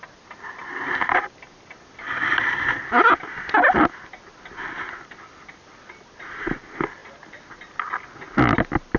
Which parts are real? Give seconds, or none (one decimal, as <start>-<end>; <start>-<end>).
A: 0.0-9.0